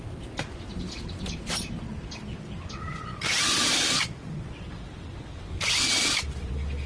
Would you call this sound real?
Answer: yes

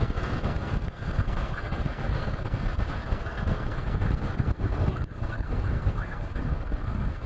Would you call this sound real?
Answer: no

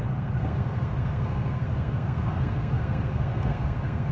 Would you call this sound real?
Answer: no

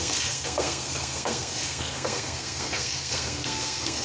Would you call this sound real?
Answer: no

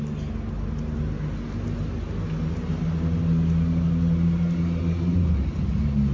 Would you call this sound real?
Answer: yes